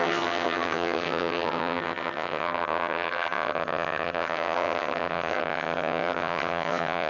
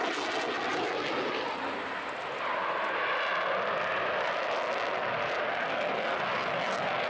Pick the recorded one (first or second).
second